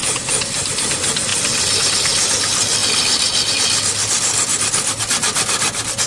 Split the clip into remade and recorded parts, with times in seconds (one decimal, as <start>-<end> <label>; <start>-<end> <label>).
0.0-0.6 remade; 0.6-1.3 recorded; 1.3-1.8 remade; 1.8-6.1 recorded